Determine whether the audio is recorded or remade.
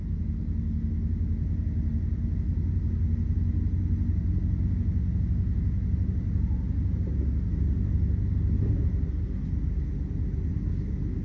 recorded